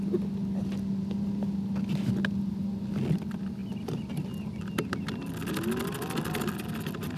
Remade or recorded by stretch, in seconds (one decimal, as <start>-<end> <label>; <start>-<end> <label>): 0.0-7.2 recorded